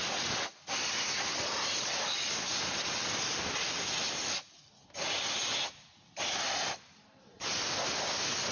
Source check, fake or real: real